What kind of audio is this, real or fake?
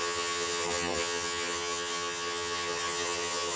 fake